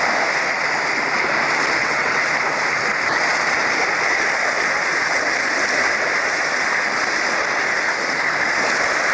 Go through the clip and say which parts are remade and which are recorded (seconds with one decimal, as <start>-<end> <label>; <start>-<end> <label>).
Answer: 0.0-1.8 recorded; 1.8-2.3 remade; 2.3-9.1 recorded